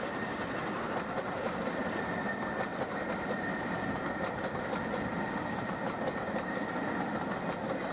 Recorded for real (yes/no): yes